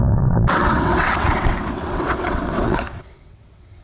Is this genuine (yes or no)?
no